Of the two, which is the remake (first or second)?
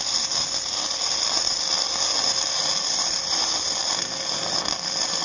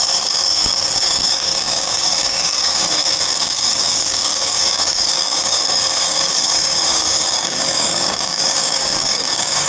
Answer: second